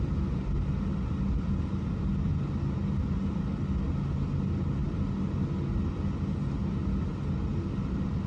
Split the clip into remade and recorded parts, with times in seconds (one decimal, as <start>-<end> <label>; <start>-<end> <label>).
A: 0.0-8.3 recorded